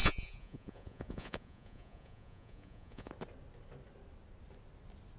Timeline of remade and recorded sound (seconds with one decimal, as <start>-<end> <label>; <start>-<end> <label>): 0.0-3.1 remade; 3.1-5.2 recorded